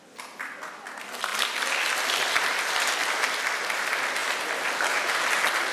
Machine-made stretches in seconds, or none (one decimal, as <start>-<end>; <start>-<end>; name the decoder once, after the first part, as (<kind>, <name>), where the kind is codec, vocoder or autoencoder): none